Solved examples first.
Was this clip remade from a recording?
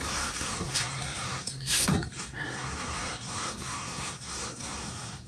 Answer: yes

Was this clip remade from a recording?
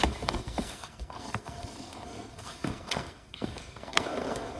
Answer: yes